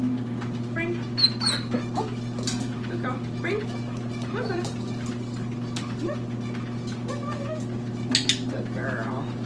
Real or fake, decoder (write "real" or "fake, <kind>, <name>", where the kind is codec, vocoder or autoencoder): real